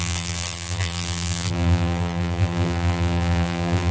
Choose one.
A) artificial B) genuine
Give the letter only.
A